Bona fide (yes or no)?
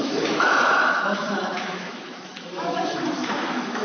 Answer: no